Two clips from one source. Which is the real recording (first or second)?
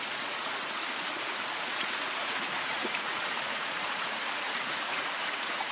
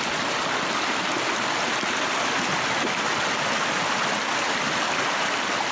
second